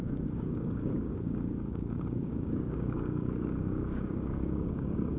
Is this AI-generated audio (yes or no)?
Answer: yes